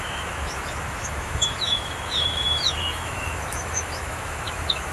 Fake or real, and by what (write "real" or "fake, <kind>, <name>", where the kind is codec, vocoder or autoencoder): fake, autoencoder, DAC-VAE